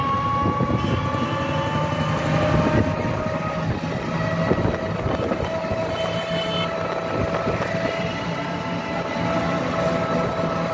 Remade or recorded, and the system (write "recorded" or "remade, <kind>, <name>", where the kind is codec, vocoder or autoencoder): recorded